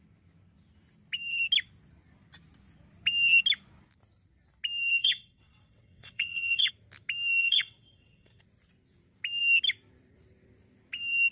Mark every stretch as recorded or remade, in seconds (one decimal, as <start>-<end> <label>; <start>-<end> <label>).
0.0-5.0 recorded; 5.0-6.7 remade; 6.7-7.4 recorded; 7.4-8.4 remade; 8.4-11.3 recorded